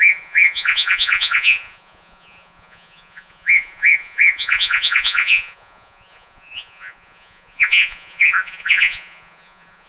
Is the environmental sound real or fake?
fake